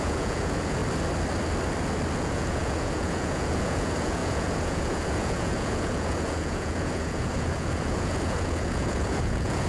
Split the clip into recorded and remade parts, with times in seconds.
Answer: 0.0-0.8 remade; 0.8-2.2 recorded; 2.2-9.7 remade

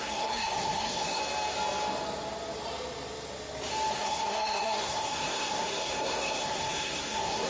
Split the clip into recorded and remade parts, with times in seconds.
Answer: 0.0-1.2 remade; 1.2-3.9 recorded; 3.9-7.5 remade